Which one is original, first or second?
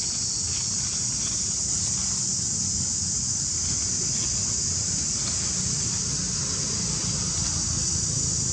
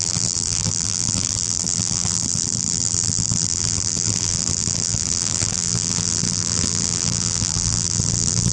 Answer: first